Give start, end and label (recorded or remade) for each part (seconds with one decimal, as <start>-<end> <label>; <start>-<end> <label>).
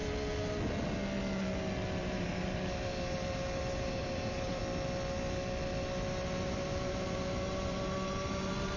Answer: 0.0-2.0 recorded; 2.0-4.6 remade; 4.6-6.5 recorded; 6.5-8.8 remade